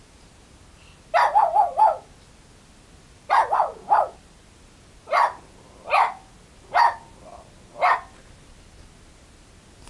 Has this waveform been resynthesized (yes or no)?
no